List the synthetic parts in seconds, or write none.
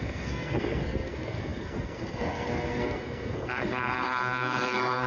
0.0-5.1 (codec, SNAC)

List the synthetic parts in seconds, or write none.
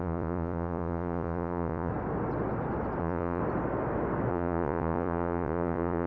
0.0-1.9 (vocoder, Vocos); 3.0-3.4; 4.3-6.1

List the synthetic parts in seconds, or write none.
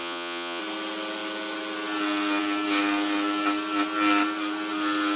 0.0-0.6 (vocoder, Vocos)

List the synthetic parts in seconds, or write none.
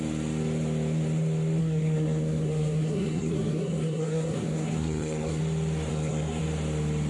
1.6-5.4 (codec, SNAC); 5.9-6.4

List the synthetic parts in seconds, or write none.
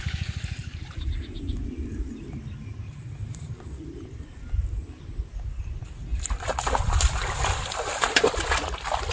0.6-5.4 (vocoder, BigVGAN v2); 6.1-9.1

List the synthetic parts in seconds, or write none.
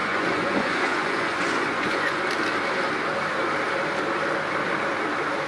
0.0-2.2 (vocoder, Vocos)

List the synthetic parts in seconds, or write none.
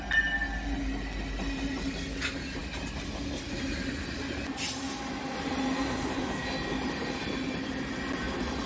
none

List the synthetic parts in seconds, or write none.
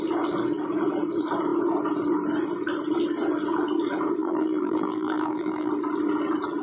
4.2-5.7 (vocoder, BigVGAN v2)